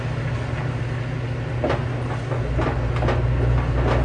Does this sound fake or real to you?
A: real